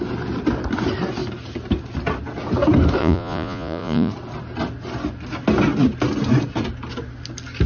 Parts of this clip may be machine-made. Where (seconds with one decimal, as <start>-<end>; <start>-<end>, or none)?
3.0-4.1